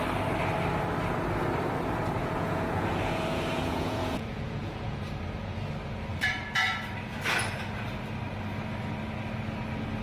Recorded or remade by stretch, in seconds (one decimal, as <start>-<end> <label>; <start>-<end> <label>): 0.0-2.2 recorded; 2.2-5.0 remade; 5.0-10.0 recorded

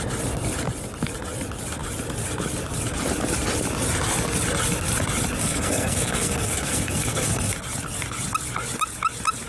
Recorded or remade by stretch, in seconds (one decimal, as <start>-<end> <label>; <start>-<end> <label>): 0.0-5.4 recorded; 5.4-7.5 remade; 7.5-9.5 recorded

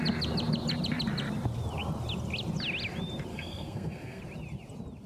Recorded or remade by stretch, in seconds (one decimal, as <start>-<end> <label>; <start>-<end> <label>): 0.0-3.3 recorded; 3.3-4.2 remade; 4.2-5.1 recorded

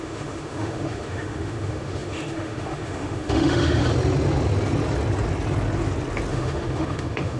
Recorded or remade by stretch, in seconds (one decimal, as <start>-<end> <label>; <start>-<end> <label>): 0.0-3.8 remade; 3.8-6.3 recorded; 6.3-7.4 remade

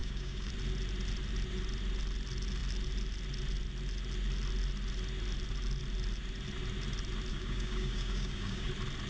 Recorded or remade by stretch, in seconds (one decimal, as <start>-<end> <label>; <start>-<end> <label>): 0.0-0.5 remade; 0.5-7.3 recorded; 7.3-8.7 remade; 8.7-9.1 recorded

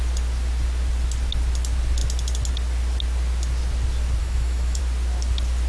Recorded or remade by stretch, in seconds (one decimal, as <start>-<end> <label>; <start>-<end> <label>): 0.0-4.2 recorded; 4.2-4.8 remade; 4.8-5.7 recorded

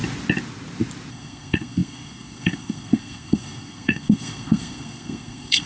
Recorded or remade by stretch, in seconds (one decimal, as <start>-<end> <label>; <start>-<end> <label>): 0.0-1.1 recorded; 1.1-5.7 remade